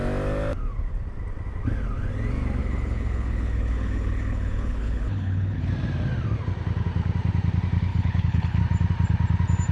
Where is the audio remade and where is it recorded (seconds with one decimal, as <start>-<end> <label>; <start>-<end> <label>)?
0.0-2.6 recorded; 2.6-5.7 remade; 5.7-7.9 recorded; 7.9-8.6 remade; 8.6-9.7 recorded